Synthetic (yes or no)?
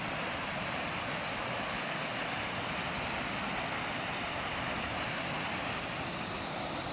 no